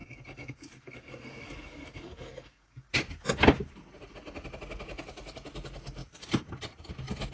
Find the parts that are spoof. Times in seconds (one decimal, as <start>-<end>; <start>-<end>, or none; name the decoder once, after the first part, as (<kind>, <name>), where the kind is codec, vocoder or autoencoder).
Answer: 0.0-2.9 (codec, DAC)